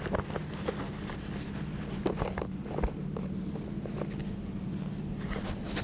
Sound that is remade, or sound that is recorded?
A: recorded